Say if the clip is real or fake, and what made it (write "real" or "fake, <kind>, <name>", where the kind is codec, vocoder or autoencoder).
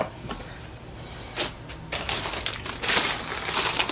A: real